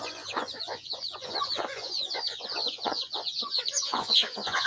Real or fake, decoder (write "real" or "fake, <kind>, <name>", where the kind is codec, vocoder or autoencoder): fake, vocoder, Vocos